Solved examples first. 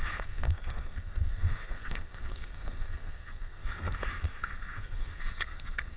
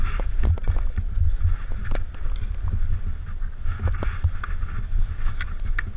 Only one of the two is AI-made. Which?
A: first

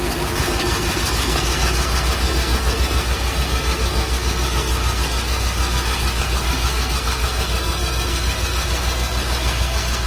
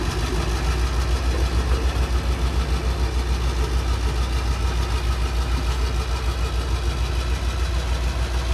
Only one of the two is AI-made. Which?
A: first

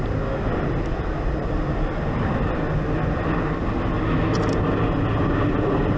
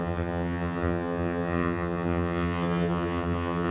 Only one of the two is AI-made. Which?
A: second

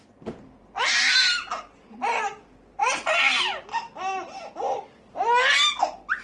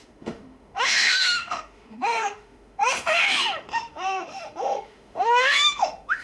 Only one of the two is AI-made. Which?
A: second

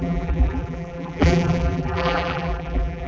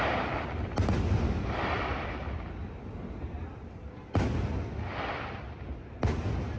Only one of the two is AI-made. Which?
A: first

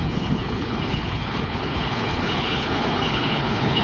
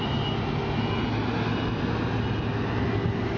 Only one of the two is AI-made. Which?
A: first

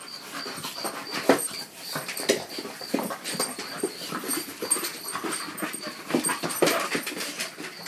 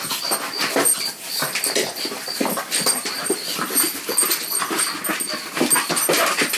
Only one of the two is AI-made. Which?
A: first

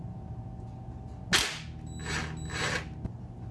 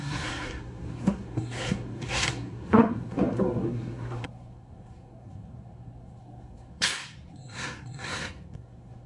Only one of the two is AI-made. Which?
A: second